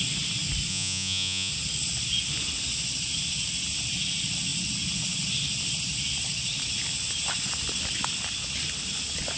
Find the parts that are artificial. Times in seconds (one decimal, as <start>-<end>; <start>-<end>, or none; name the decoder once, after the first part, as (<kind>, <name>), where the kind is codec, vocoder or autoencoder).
0.7-1.5 (vocoder, Vocos)